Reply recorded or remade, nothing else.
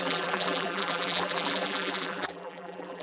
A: remade